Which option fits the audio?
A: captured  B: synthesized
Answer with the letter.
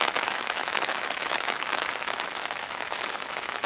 B